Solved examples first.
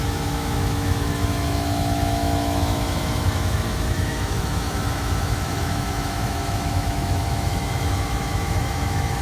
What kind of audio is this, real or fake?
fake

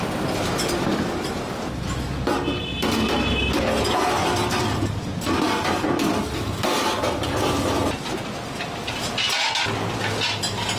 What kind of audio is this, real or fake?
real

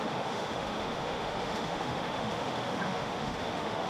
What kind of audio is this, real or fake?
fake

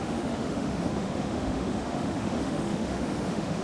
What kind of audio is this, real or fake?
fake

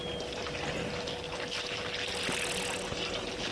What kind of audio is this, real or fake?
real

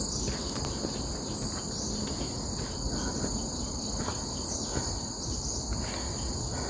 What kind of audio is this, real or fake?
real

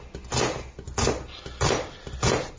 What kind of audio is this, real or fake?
real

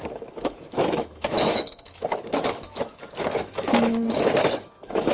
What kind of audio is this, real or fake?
fake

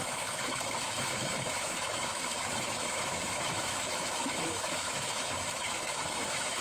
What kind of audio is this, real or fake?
fake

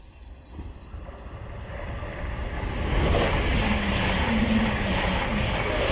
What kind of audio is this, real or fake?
real